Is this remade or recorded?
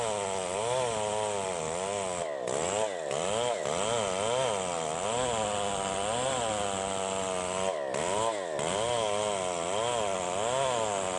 recorded